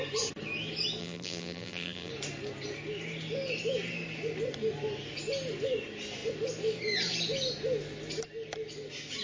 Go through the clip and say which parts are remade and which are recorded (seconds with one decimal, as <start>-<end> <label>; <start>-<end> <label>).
0.0-1.0 recorded; 1.0-2.1 remade; 2.1-9.2 recorded